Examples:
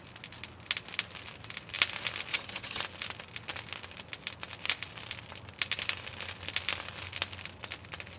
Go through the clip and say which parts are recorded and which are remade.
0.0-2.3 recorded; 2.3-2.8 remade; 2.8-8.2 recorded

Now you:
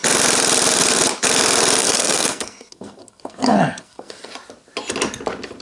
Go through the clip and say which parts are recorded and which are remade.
0.0-1.8 recorded; 1.8-4.3 remade; 4.3-5.6 recorded

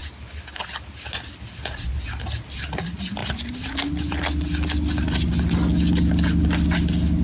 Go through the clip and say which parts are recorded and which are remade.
0.0-7.2 recorded

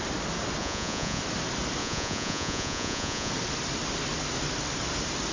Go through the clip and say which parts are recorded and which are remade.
0.0-0.6 recorded; 0.6-1.2 remade; 1.2-1.8 recorded; 1.8-3.3 remade; 3.3-5.3 recorded

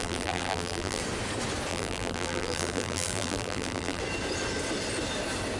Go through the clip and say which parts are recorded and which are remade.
0.0-1.0 remade; 1.0-1.7 recorded; 1.7-4.0 remade; 4.0-5.6 recorded

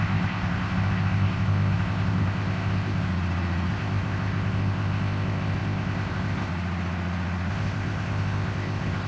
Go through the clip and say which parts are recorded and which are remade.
0.0-3.1 remade; 3.1-3.7 recorded; 3.7-6.5 remade; 6.5-7.5 recorded; 7.5-9.1 remade

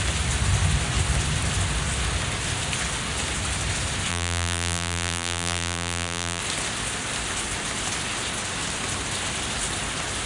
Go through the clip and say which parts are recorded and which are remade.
0.0-4.1 recorded; 4.1-6.4 remade; 6.4-10.3 recorded

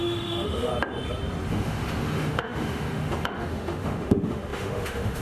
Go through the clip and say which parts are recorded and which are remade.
0.0-0.7 remade; 0.7-1.5 recorded; 1.5-5.2 remade